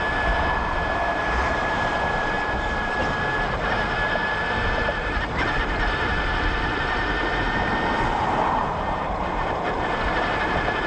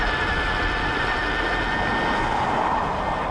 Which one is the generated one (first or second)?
first